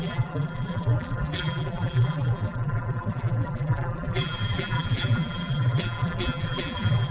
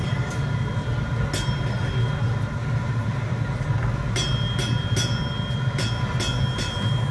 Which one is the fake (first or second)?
first